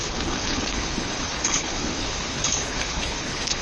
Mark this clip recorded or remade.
remade